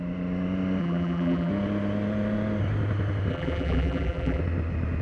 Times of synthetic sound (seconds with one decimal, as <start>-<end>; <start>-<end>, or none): 0.8-1.5; 3.3-4.4